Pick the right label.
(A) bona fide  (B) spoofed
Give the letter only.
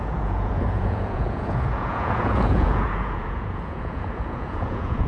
B